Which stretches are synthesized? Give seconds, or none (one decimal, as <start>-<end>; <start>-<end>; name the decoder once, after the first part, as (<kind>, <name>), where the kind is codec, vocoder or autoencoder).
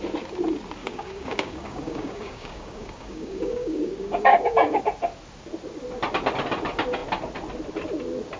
0.8-4.8 (codec, DAC)